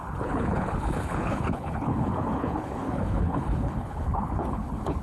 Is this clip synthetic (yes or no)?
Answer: yes